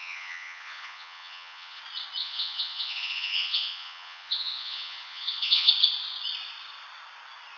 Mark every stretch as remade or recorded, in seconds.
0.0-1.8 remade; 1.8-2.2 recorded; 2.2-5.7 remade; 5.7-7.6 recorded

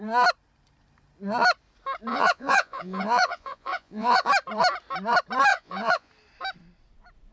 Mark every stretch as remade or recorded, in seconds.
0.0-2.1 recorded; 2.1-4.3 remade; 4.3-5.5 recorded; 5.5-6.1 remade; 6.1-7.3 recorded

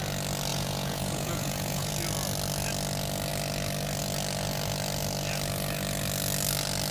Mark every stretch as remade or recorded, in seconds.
0.0-0.5 recorded; 0.5-1.9 remade; 1.9-6.9 recorded

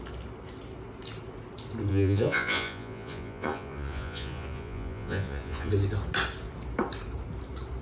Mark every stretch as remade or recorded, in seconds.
0.0-1.9 recorded; 1.9-5.7 remade; 5.7-7.8 recorded

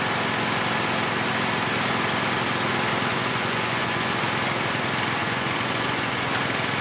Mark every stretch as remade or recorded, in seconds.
0.0-3.1 recorded; 3.1-4.2 remade; 4.2-5.2 recorded; 5.2-6.3 remade; 6.3-6.8 recorded

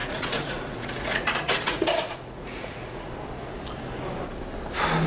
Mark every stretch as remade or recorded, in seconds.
0.0-3.1 remade; 3.1-5.1 recorded